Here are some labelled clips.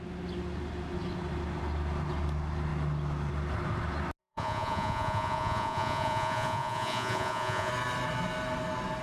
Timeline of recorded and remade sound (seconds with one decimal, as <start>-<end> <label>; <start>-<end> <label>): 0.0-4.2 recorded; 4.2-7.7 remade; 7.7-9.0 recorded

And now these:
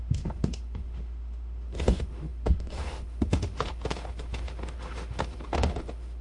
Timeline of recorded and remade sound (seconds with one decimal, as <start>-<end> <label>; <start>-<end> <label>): 0.0-6.2 remade

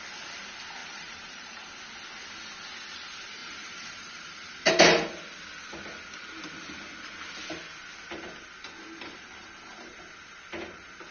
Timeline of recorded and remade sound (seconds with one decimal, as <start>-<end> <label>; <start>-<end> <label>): 0.0-0.8 recorded; 0.8-1.7 remade; 1.7-3.4 recorded; 3.4-4.7 remade; 4.7-11.1 recorded